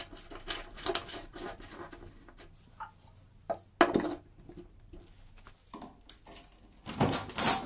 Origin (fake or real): real